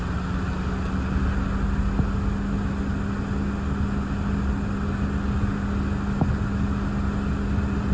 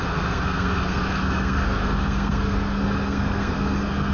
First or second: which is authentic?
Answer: first